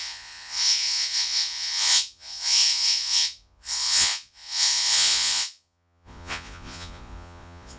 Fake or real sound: fake